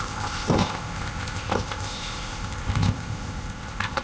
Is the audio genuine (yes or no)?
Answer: no